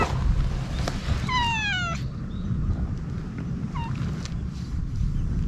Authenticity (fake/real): real